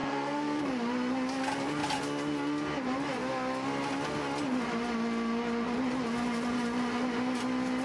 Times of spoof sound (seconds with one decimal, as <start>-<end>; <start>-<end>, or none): 0.0-0.6